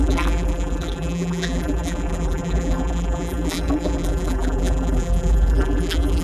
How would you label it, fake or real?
fake